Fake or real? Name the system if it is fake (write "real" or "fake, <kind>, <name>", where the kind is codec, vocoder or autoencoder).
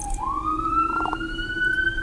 fake, vocoder, BigVGAN v2